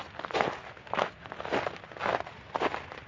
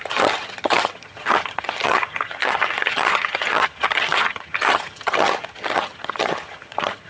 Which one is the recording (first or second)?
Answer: first